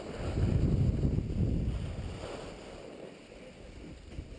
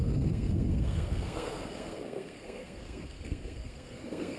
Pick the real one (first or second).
first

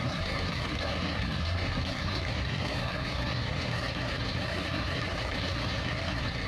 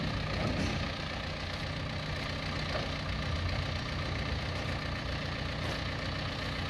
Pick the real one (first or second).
second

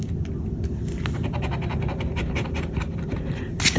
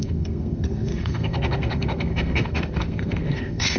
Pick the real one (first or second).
first